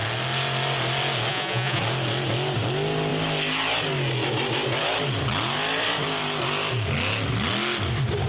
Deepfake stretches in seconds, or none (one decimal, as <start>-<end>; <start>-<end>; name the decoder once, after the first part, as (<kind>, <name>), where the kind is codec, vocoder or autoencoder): 1.3-1.8 (vocoder, Vocos)